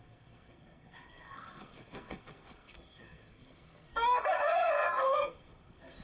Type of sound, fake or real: fake